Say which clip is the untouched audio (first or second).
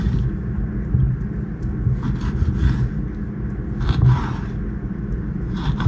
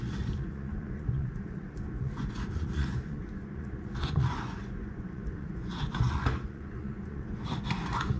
first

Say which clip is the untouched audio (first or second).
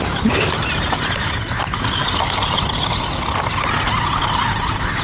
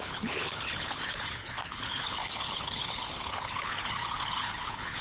first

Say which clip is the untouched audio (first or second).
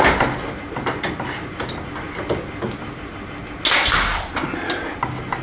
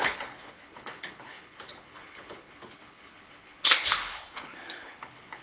first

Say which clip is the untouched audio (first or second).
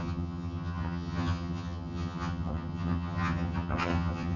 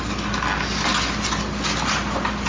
second